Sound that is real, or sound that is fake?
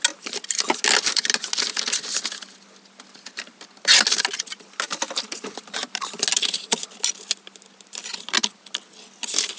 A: real